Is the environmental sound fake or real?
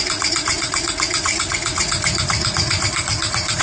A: fake